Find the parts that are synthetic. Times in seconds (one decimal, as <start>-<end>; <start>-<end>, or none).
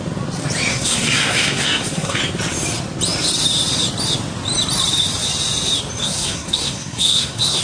0.7-2.2; 6.0-7.6